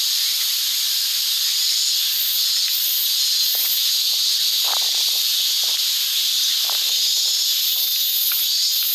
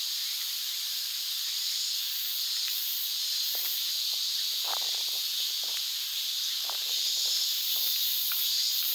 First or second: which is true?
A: first